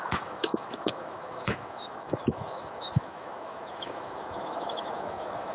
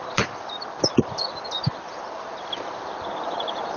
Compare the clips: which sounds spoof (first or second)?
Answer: first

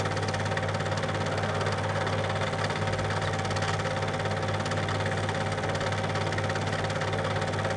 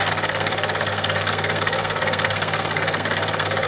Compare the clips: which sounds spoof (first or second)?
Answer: second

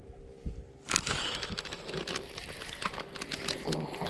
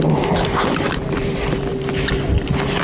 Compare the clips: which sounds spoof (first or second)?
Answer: second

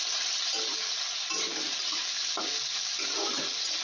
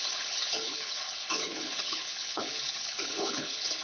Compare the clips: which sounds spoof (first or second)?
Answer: second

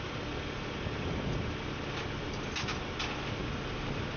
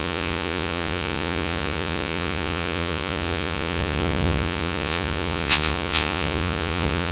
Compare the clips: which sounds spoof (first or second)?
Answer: second